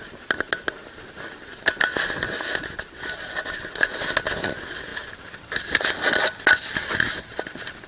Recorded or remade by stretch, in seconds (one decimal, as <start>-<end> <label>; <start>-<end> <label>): 0.0-7.9 recorded

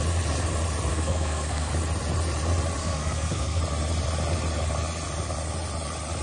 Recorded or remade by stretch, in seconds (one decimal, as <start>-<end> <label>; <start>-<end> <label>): 0.0-0.9 recorded; 0.9-1.7 remade; 1.7-2.8 recorded; 2.8-3.6 remade; 3.6-6.2 recorded

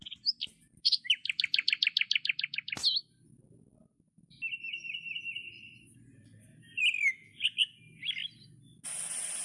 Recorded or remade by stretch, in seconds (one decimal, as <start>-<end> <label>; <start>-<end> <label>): 0.0-9.4 recorded